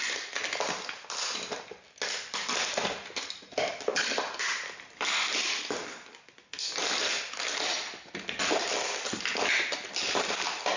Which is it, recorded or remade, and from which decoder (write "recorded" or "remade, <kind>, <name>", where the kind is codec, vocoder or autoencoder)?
recorded